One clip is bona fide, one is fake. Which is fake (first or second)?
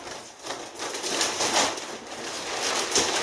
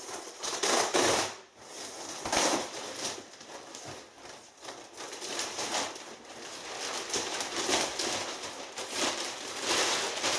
second